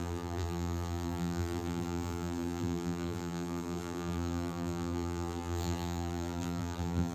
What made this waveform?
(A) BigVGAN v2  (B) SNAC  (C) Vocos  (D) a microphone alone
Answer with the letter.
A